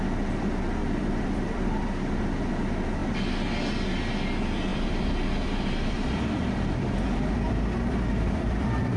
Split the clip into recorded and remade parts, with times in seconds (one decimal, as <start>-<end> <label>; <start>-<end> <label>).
0.0-0.8 recorded; 0.8-1.7 remade; 1.7-4.7 recorded; 4.7-9.0 remade